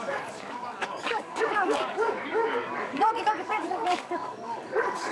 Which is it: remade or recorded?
remade